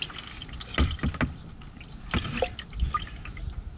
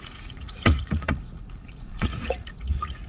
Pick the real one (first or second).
first